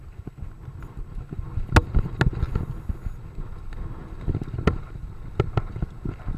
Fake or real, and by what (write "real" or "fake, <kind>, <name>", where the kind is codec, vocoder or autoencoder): real